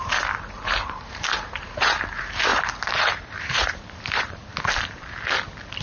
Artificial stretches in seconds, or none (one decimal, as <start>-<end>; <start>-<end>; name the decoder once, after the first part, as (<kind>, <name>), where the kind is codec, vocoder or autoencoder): 0.0-4.5 (vocoder, BigVGAN v2)